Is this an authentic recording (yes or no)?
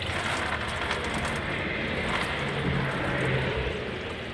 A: yes